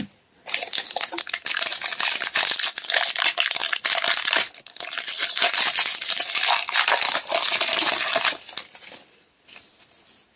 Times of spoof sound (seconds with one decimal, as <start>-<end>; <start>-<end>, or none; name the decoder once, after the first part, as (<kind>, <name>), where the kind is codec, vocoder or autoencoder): none